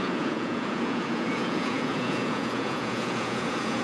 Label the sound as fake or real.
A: fake